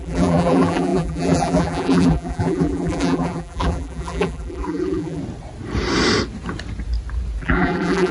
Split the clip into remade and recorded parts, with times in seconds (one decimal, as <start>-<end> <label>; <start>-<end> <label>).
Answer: 0.0-5.2 remade; 5.2-7.4 recorded; 7.4-8.1 remade

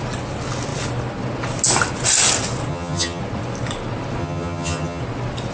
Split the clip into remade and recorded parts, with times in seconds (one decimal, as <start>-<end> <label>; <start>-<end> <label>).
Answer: 0.0-2.7 recorded; 2.7-3.2 remade; 3.2-4.2 recorded; 4.2-5.0 remade; 5.0-5.5 recorded